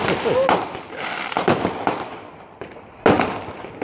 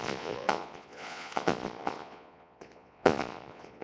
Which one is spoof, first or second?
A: second